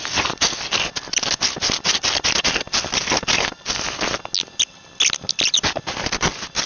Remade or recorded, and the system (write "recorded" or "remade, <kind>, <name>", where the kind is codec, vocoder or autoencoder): recorded